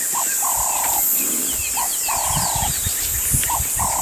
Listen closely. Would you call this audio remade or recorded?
recorded